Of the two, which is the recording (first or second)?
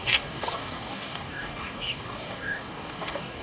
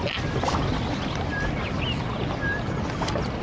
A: second